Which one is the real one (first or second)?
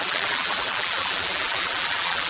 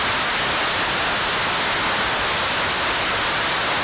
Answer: second